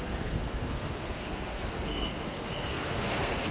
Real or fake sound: fake